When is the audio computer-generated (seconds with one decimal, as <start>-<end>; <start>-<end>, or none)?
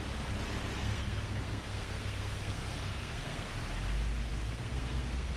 0.8-3.5; 4.3-5.4